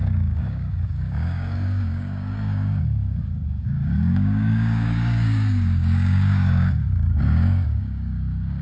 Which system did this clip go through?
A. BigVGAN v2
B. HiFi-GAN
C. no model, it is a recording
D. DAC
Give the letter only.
D